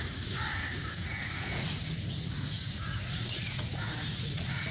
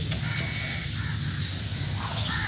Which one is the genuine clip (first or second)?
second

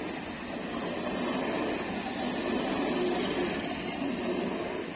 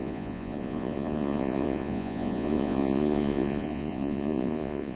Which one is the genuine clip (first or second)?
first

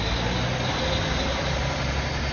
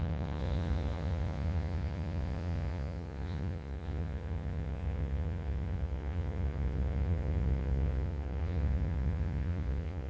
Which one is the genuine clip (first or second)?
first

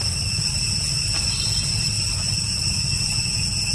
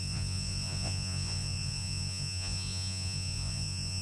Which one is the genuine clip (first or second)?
first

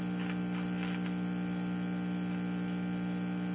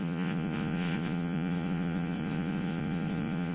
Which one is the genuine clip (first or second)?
first